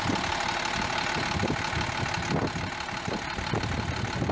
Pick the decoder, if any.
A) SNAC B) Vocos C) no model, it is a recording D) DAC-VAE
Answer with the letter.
C